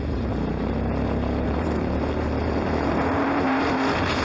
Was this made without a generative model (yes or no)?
no